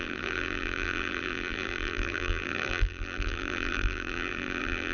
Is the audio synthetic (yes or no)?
yes